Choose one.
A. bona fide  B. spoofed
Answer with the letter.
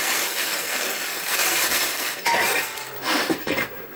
B